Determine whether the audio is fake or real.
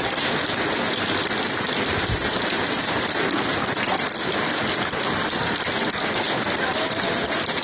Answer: real